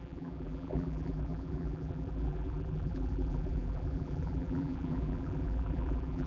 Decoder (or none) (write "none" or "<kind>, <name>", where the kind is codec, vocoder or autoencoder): vocoder, BigVGAN v2